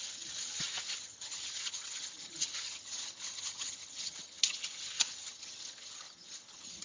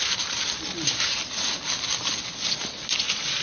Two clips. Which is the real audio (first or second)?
second